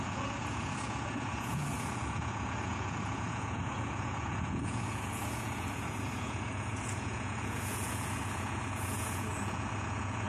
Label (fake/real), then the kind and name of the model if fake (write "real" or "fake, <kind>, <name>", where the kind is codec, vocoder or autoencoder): fake, vocoder, Vocos